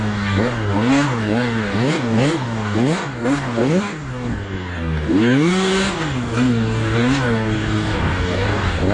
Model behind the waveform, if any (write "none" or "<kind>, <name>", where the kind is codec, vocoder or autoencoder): codec, DAC